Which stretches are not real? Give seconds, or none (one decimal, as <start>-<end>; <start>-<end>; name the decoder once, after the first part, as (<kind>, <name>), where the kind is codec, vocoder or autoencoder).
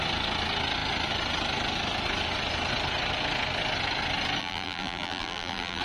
4.4-5.8 (vocoder, BigVGAN v2)